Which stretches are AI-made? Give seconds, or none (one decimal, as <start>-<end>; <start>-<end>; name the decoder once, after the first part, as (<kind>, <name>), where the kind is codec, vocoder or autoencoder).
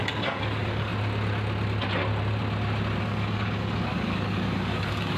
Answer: 0.0-0.9 (codec, DAC); 3.0-5.2